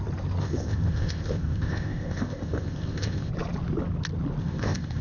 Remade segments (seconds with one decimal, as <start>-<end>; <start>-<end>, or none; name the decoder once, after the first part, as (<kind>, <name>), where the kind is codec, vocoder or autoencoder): 0.4-3.3 (codec, ZipCodec); 4.4-5.0